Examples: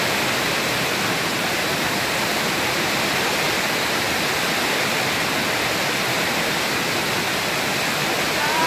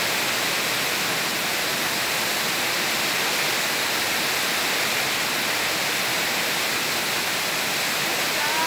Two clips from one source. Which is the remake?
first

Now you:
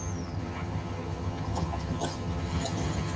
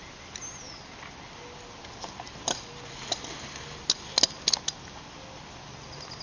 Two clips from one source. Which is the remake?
first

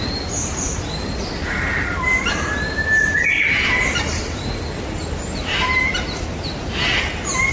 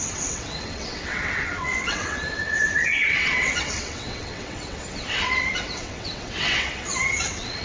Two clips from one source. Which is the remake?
second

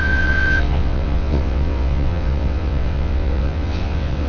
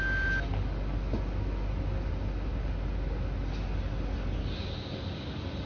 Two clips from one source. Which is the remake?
first